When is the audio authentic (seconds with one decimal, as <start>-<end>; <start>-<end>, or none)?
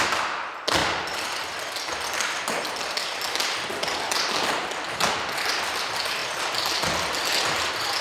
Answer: 0.0-8.0